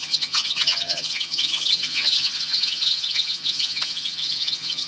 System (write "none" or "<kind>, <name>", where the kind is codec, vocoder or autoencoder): vocoder, HiFi-GAN